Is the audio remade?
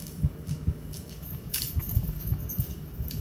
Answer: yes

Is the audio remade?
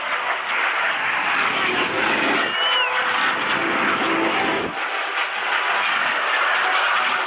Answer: no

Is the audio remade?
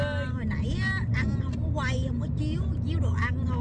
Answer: no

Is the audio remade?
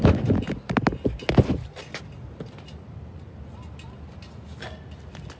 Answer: no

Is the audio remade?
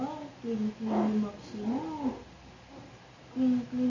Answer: no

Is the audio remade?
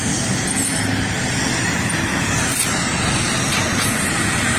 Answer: no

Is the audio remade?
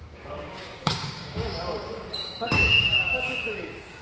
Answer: yes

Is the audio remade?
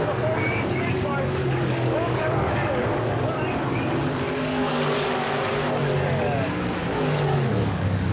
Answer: yes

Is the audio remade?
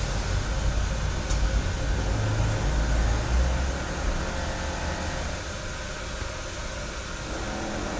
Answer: no